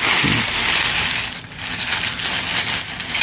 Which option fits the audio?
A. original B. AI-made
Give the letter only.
A